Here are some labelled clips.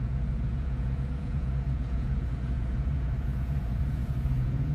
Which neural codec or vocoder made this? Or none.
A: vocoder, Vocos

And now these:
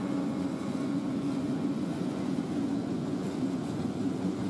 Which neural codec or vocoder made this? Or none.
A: vocoder, Vocos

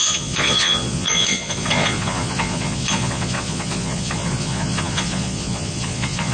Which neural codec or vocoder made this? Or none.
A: vocoder, Vocos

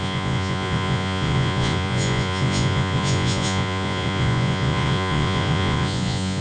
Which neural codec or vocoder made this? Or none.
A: vocoder, Vocos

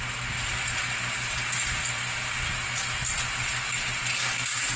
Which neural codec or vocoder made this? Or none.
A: none